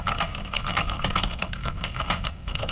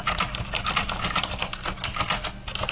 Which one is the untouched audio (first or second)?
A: second